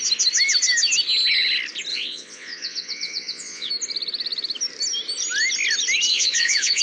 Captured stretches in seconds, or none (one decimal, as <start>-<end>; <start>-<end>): 0.0-1.9; 3.7-6.1